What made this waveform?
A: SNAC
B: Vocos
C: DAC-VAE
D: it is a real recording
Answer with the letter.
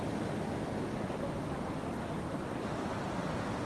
D